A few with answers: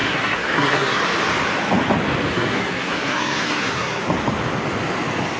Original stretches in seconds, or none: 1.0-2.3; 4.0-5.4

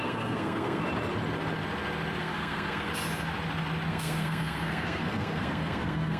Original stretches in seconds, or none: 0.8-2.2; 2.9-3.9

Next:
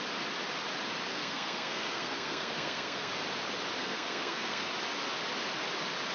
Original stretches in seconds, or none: 0.0-1.1; 3.1-3.8; 4.7-6.1

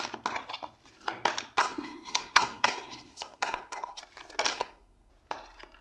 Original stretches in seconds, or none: 0.0-1.6; 4.0-4.5; 5.1-5.8

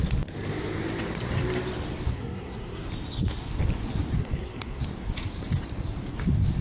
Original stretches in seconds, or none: 0.0-2.1; 2.9-4.2; 4.8-6.6